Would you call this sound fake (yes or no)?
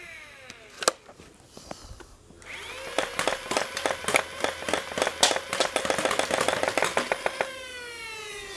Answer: no